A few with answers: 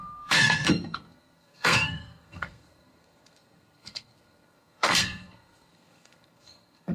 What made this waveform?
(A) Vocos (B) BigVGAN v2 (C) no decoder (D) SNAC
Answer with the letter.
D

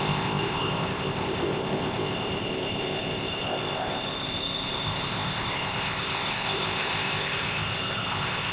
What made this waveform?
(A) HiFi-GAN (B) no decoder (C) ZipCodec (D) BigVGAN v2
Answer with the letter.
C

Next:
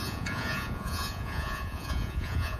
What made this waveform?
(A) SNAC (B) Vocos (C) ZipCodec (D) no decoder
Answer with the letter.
B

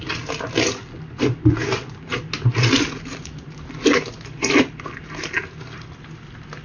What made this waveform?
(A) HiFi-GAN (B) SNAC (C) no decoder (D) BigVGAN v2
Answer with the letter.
C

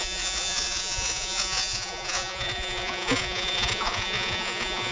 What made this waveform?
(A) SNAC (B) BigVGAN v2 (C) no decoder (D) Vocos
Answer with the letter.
D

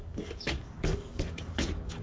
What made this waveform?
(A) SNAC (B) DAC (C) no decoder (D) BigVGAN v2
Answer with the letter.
B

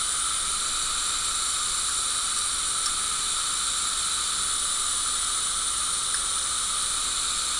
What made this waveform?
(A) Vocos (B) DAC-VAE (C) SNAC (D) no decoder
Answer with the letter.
D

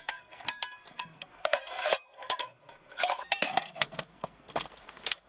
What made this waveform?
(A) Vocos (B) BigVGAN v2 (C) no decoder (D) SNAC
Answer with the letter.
D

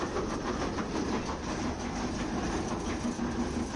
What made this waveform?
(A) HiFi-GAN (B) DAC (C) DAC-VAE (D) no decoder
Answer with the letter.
D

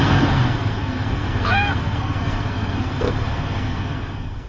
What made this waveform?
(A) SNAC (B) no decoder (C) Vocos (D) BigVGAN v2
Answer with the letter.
A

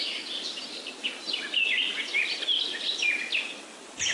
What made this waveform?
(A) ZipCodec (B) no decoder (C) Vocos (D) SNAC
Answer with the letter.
B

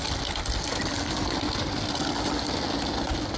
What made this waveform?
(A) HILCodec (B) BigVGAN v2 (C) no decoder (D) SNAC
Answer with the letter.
C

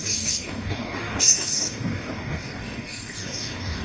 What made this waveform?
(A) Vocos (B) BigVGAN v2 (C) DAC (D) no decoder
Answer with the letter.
C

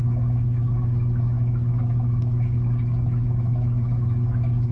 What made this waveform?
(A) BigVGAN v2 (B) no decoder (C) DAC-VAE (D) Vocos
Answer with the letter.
C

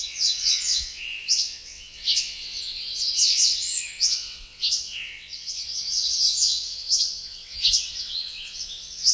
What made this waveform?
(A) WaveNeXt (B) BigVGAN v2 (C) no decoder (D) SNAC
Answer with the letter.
A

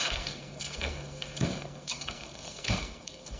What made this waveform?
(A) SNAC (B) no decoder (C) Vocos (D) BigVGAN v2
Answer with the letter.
A